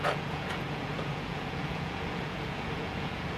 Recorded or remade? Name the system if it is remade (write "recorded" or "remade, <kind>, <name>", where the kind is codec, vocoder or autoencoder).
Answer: remade, vocoder, Vocos